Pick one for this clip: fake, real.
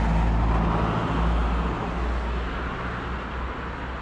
real